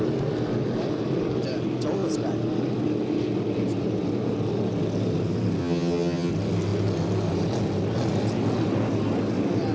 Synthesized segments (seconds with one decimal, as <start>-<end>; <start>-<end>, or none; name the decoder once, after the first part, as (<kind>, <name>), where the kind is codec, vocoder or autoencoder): 5.6-6.3 (vocoder, HiFi-GAN)